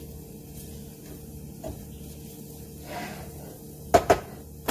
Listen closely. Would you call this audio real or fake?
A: real